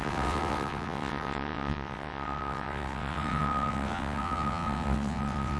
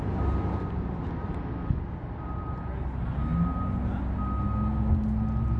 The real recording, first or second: second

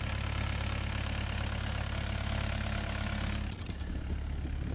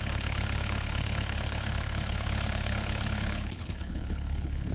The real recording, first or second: first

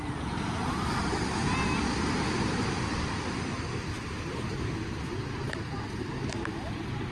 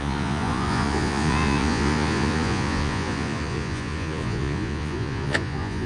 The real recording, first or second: first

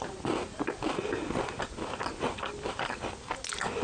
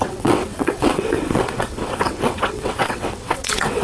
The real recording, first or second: first